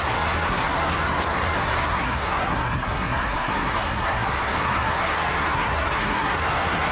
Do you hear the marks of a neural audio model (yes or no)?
yes